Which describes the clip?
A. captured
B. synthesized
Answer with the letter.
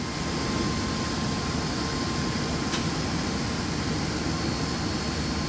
A